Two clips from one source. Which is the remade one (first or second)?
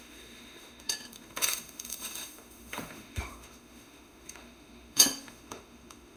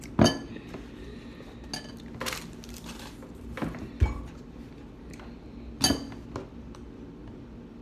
first